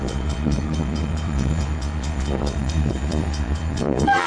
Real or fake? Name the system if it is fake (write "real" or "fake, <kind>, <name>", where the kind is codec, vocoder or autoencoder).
fake, vocoder, Vocos